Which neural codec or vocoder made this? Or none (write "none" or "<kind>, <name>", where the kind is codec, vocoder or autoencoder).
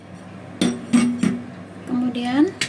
none